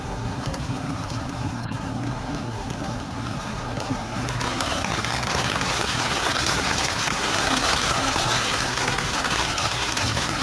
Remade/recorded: remade